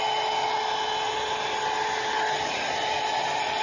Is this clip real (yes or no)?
yes